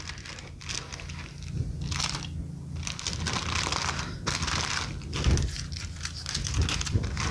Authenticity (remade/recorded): recorded